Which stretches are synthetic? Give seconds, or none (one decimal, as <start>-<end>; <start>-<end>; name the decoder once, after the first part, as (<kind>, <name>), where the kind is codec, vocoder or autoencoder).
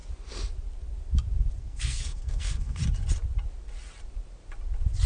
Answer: 1.6-2.8 (codec, SNAC)